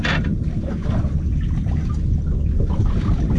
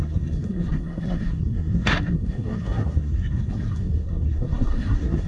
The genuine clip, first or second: first